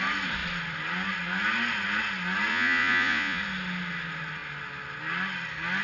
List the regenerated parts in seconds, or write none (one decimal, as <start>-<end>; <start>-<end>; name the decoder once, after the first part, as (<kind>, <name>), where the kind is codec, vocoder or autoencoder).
2.5-3.4 (vocoder, Vocos)

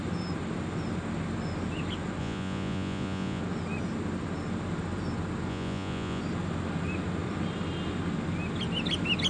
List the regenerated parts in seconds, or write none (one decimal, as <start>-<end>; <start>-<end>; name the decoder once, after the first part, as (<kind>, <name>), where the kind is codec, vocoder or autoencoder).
2.2-3.4 (vocoder, Vocos); 5.5-6.2

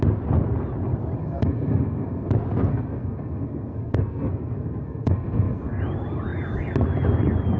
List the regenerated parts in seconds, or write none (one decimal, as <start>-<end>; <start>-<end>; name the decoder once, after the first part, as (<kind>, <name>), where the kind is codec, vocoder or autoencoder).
1.2-2.3 (codec, SNAC); 2.7-5.8

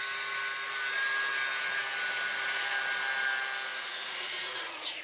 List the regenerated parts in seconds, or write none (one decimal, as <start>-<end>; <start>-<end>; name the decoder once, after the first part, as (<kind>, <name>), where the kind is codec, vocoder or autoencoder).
3.7-5.0 (vocoder, Vocos)